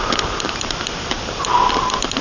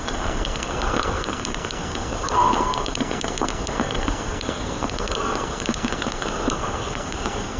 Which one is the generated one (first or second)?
second